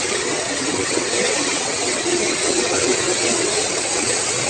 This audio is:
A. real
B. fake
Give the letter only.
B